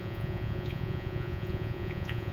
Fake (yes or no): yes